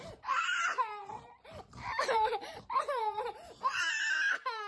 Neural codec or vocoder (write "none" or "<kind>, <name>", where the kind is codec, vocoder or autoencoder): vocoder, BigVGAN v2